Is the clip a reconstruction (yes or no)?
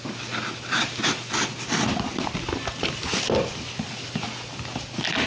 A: no